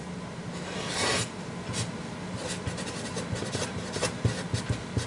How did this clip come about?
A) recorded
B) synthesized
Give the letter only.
A